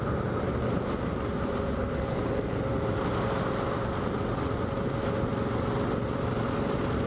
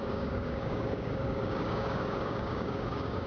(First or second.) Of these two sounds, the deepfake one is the second